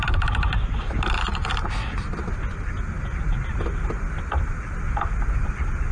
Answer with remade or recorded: recorded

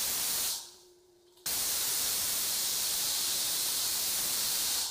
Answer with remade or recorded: remade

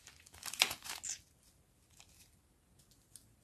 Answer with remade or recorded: recorded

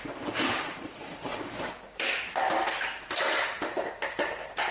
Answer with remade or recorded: remade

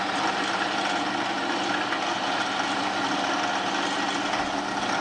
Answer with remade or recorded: recorded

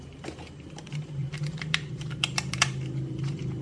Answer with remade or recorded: remade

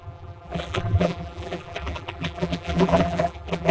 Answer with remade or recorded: remade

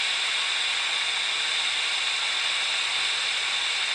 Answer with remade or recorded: recorded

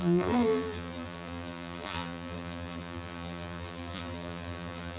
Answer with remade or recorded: remade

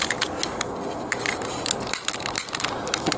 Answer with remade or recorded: remade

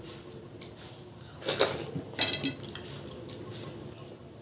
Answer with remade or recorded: recorded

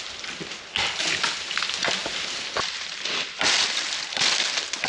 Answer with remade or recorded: recorded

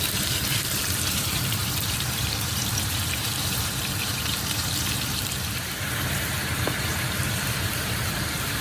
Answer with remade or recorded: remade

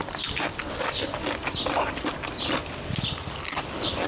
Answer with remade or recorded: recorded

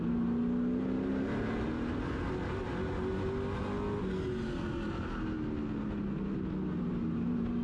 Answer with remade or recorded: recorded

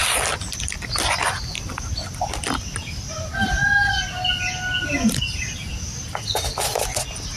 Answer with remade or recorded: recorded